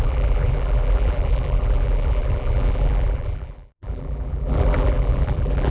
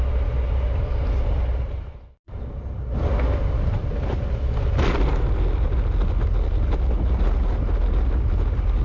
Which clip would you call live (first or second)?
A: second